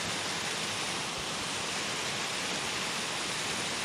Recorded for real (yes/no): yes